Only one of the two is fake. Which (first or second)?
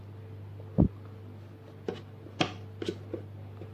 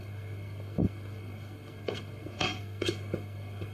second